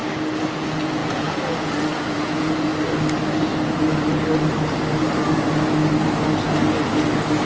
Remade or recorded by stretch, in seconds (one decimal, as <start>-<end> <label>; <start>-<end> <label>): 0.0-0.5 recorded; 0.5-2.7 remade; 2.7-7.5 recorded